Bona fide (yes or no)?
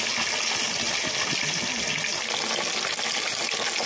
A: yes